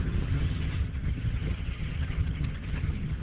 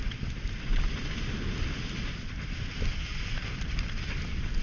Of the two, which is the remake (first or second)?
first